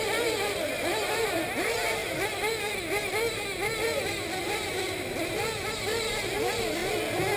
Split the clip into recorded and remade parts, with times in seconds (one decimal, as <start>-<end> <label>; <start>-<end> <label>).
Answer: 0.0-2.0 remade; 2.0-4.4 recorded; 4.4-6.8 remade; 6.8-7.4 recorded